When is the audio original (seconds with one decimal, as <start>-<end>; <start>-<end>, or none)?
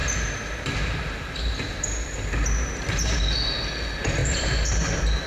3.2-4.2; 4.7-5.3